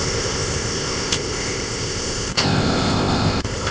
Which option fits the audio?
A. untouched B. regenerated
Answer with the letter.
B